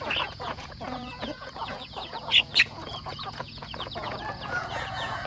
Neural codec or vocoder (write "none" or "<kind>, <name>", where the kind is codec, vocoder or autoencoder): vocoder, Vocos